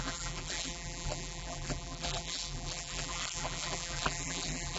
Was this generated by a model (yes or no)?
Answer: yes